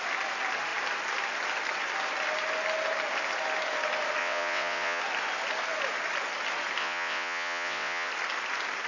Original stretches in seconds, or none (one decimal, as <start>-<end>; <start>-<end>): 0.0-4.2; 5.0-6.8; 8.1-8.9